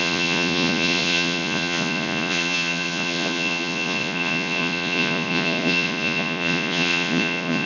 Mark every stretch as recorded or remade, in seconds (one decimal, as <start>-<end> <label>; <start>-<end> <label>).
0.0-7.7 remade